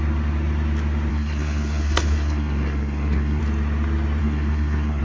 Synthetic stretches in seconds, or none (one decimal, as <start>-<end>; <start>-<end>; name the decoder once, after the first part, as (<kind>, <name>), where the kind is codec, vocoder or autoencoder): 1.1-3.4 (codec, SNAC); 4.2-5.0